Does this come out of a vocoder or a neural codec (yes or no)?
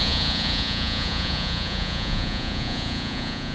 yes